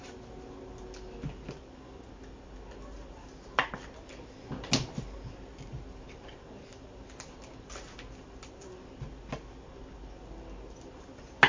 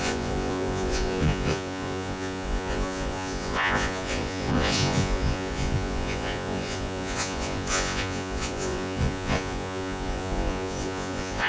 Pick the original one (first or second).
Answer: first